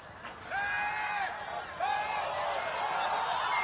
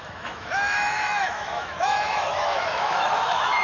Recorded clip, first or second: first